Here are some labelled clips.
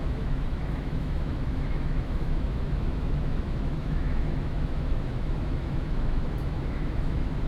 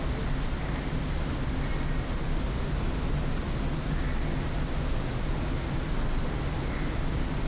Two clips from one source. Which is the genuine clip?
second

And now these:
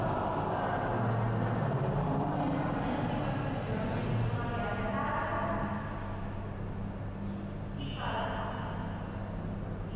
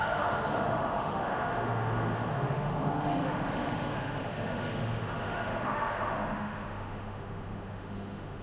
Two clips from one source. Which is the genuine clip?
first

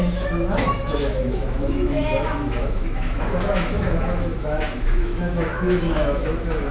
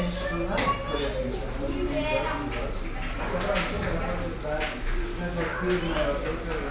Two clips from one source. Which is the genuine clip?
second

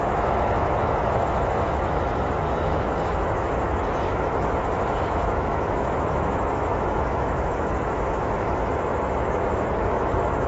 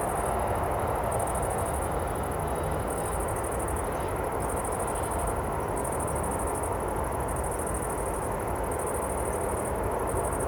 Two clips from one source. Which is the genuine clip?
second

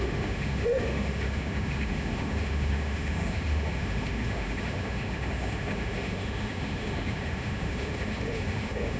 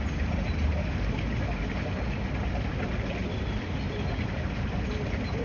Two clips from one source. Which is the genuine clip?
second